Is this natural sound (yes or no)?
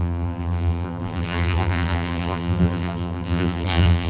no